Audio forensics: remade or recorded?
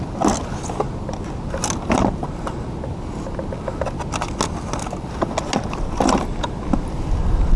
recorded